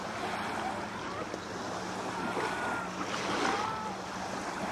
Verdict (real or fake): real